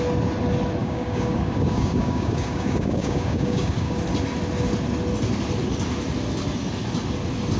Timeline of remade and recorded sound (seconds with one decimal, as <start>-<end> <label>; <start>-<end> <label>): 0.0-0.8 recorded; 0.8-4.0 remade; 4.0-7.6 recorded